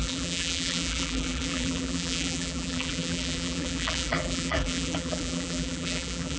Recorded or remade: remade